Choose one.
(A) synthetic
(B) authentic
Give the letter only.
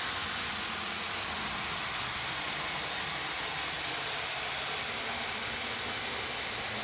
B